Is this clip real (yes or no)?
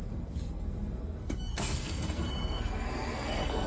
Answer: no